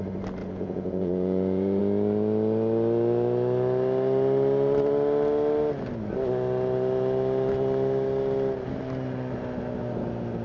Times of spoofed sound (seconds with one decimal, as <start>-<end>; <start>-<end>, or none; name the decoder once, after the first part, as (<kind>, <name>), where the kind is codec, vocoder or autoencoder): 0.4-1.8 (vocoder, Vocos)